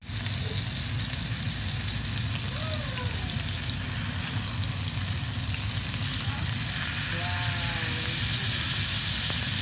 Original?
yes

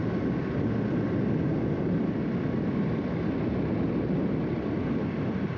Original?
yes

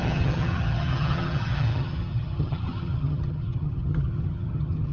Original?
no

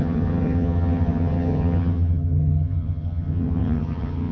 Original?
no